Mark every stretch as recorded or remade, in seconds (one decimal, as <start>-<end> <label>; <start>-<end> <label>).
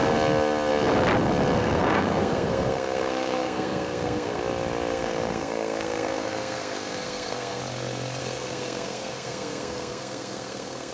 0.0-1.6 recorded; 1.6-4.4 remade; 4.4-4.9 recorded; 4.9-7.6 remade; 7.6-8.2 recorded; 8.2-10.9 remade